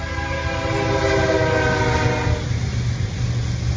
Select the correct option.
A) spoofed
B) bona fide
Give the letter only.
B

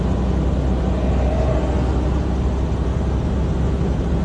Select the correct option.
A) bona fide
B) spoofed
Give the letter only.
A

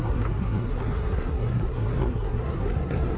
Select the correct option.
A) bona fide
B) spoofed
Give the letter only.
B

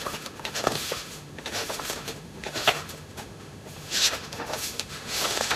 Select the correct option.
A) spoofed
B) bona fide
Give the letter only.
A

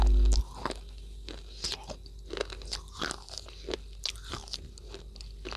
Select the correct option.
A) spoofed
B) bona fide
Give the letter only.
B